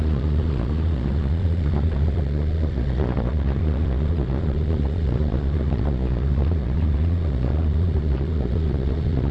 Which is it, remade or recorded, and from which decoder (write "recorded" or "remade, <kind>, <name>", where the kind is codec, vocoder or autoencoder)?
remade, vocoder, Vocos